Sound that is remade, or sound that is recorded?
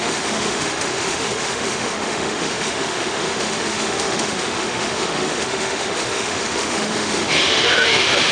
remade